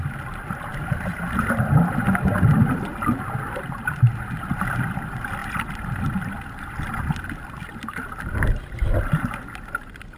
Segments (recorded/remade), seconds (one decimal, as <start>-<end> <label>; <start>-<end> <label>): 0.0-0.7 recorded; 0.7-1.6 remade; 1.6-10.2 recorded